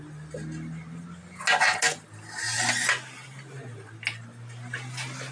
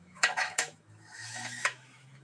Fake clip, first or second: second